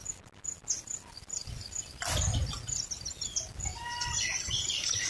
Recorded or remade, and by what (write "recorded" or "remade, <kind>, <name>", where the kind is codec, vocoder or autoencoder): recorded